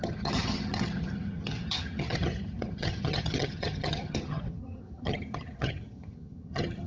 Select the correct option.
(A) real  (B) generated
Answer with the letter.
B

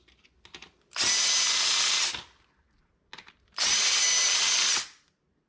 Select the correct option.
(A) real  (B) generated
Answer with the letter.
A